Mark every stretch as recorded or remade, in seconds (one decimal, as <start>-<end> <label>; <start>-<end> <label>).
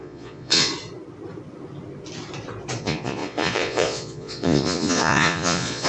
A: 0.0-0.7 remade; 0.7-2.8 recorded; 2.8-5.9 remade